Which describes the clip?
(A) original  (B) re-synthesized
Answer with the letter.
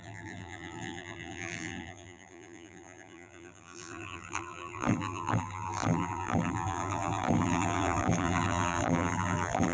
B